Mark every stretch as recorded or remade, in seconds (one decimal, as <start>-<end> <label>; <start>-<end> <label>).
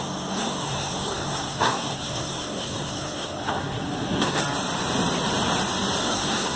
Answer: 0.0-4.4 remade; 4.4-6.0 recorded; 6.0-6.6 remade